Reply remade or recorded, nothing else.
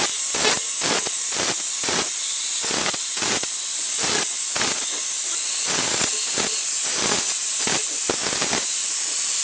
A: recorded